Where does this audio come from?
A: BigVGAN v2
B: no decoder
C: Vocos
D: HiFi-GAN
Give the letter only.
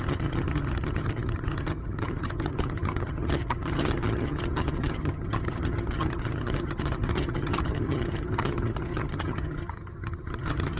D